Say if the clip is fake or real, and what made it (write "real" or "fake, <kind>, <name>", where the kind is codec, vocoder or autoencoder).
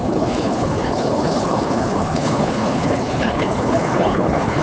fake, codec, HILCodec